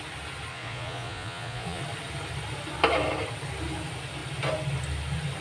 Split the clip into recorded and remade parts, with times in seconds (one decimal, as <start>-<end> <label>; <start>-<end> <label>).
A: 0.0-0.5 recorded; 0.5-1.8 remade; 1.8-5.4 recorded